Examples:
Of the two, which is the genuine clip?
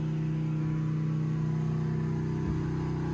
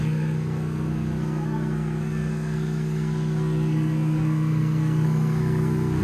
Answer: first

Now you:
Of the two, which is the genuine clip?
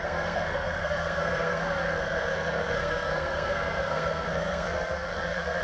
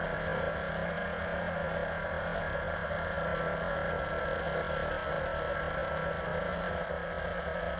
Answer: second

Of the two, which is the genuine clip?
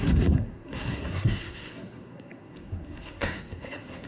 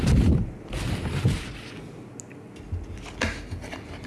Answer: second